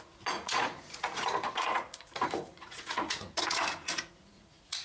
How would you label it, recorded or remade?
remade